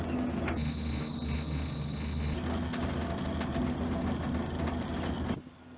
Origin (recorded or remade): recorded